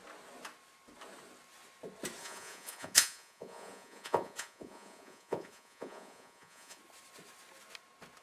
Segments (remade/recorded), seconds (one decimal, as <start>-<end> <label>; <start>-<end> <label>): 0.0-2.2 recorded; 2.2-6.8 remade; 6.8-8.2 recorded